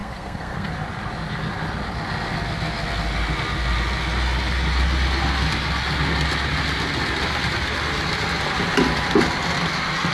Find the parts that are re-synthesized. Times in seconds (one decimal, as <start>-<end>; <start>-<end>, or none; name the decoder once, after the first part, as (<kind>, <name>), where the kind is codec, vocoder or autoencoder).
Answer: 0.0-0.7 (codec, SNAC)